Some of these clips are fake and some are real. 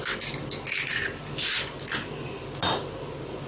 real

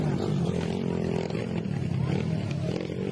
real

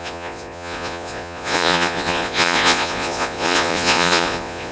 fake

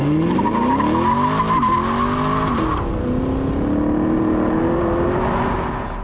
real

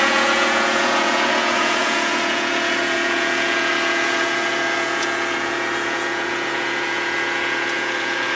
fake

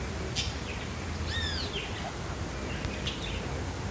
real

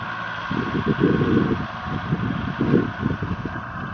real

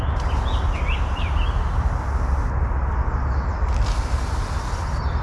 real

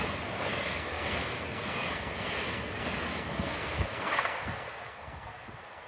fake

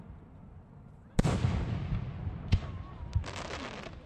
real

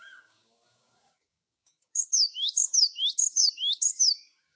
fake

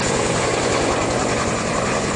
fake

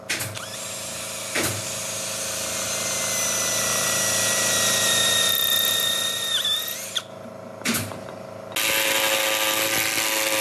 real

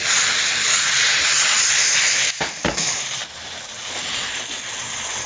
real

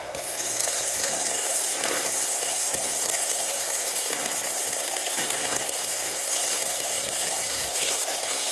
fake